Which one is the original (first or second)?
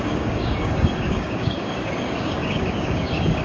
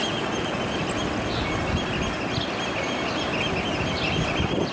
second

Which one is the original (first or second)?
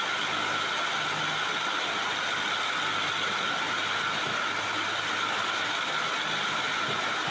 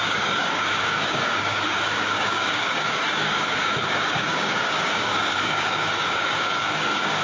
first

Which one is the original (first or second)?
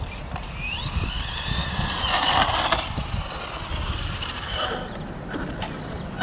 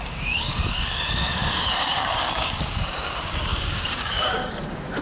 first